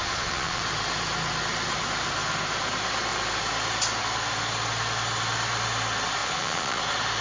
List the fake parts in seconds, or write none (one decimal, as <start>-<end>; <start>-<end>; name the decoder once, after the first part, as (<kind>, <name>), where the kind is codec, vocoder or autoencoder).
0.0-0.6 (vocoder, Vocos); 6.2-6.8